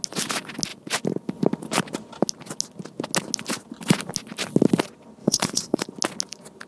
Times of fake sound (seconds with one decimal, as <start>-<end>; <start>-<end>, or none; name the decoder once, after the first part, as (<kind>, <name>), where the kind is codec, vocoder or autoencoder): 5.2-5.9 (vocoder, Vocos)